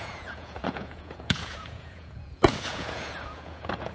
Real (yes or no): no